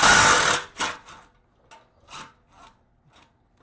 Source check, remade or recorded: recorded